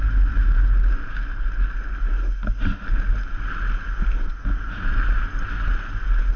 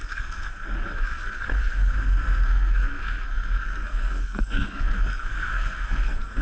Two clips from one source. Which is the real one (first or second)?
first